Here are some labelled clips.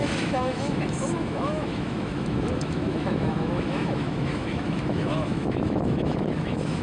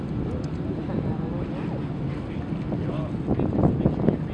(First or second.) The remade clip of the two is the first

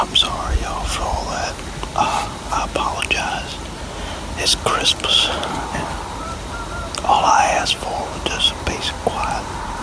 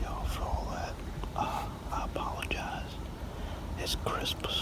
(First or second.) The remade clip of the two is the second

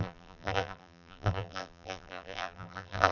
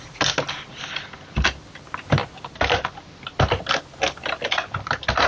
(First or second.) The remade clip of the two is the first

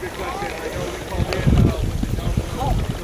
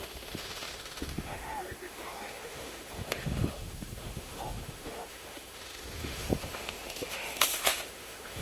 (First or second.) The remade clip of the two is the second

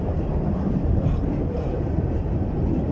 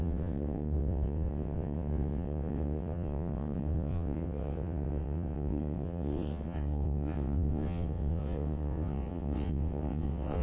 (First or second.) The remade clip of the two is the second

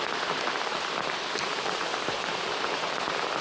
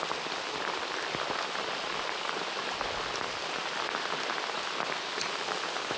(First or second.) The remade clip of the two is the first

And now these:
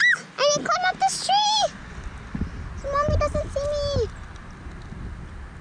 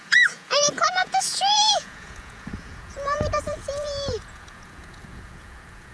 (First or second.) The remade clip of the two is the second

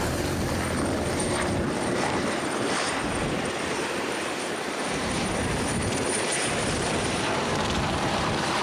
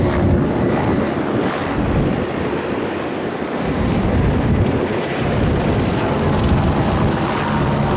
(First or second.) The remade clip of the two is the first